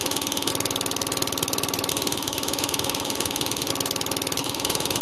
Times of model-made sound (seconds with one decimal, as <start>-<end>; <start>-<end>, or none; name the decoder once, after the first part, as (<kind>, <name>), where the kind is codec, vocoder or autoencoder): 0.0-0.5 (autoencoder, DAC-VAE); 1.9-3.7; 4.4-5.0